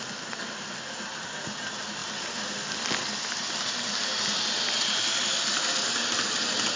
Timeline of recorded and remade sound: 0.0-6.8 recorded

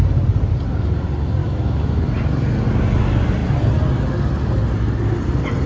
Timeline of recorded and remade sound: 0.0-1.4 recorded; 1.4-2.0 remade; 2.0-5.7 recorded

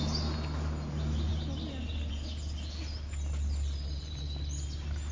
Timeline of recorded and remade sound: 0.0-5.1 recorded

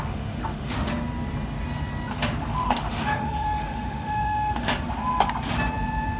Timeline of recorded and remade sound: 0.0-0.9 remade; 0.9-2.5 recorded; 2.5-4.7 remade; 4.7-6.2 recorded